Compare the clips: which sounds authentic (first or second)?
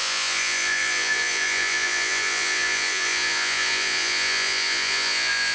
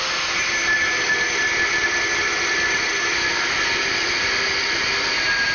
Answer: second